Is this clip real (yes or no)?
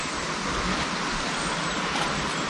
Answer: yes